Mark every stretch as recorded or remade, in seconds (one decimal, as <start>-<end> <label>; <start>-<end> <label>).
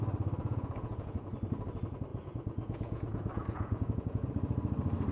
0.0-0.4 recorded; 0.4-1.3 remade; 1.3-2.1 recorded; 2.1-4.3 remade; 4.3-5.1 recorded